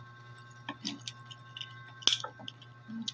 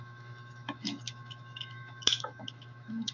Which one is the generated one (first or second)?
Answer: second